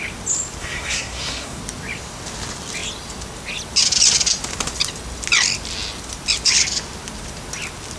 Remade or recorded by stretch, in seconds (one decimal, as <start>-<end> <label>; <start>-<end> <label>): 0.0-0.6 recorded; 0.6-1.6 remade; 1.6-8.0 recorded